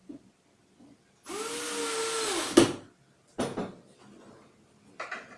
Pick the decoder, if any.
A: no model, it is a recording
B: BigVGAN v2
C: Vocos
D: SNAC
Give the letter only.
A